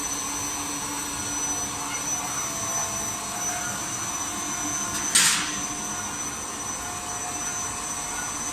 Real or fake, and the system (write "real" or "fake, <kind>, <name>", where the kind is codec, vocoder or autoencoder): real